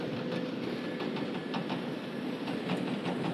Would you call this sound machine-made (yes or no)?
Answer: no